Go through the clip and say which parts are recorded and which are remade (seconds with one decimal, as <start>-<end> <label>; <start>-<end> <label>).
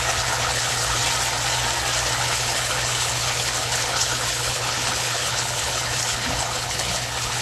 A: 0.0-1.0 remade; 1.0-2.2 recorded; 2.2-7.4 remade